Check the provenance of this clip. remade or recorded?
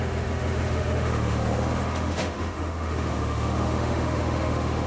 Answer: remade